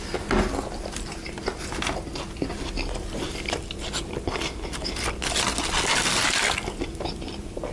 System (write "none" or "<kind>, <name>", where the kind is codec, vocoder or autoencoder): none